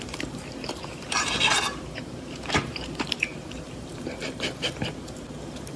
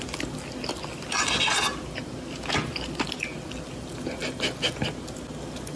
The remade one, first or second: first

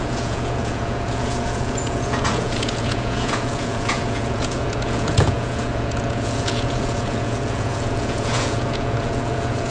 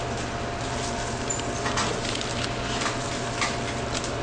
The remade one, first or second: first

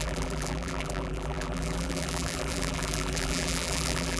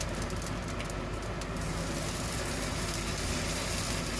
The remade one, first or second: first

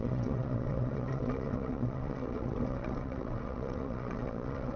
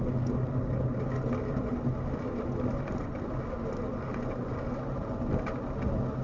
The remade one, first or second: first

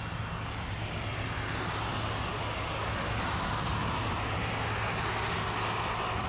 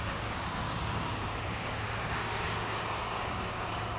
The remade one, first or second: second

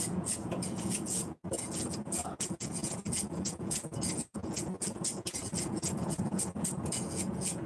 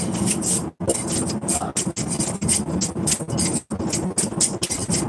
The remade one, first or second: first